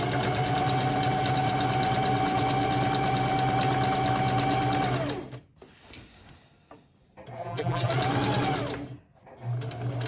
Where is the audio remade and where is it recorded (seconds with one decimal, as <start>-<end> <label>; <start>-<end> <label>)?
0.0-7.4 recorded; 7.4-7.9 remade; 7.9-10.1 recorded